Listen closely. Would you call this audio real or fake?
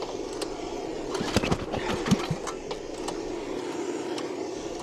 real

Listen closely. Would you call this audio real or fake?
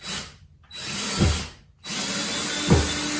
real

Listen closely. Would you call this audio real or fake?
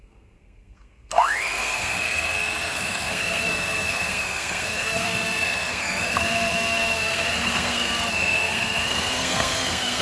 fake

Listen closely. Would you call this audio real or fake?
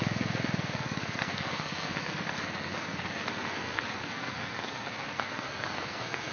fake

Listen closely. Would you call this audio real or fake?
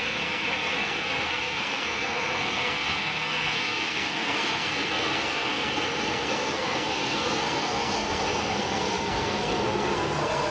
fake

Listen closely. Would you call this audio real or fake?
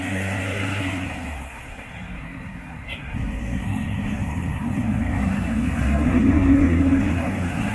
fake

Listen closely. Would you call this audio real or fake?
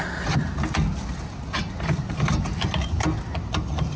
real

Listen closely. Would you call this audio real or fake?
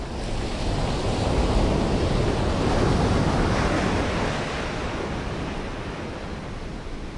real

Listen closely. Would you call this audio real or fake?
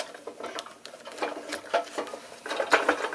real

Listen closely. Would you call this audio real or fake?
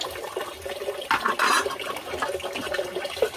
real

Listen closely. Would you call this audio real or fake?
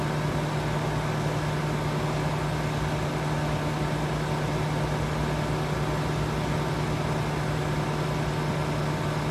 real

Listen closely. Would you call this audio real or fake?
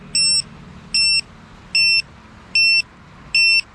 real